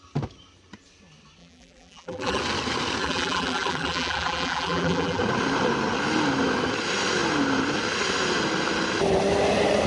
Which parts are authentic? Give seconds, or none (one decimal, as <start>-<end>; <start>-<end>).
0.0-1.4; 2.4-3.0; 5.2-9.9